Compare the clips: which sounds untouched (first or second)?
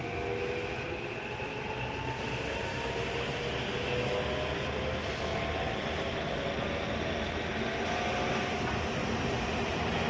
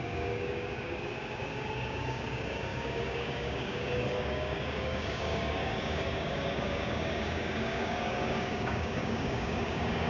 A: first